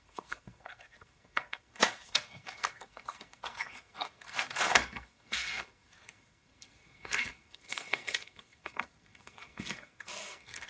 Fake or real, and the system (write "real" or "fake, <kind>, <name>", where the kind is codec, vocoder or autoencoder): fake, codec, SNAC